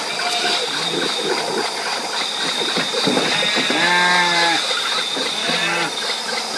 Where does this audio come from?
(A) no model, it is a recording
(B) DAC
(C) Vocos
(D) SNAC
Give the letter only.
A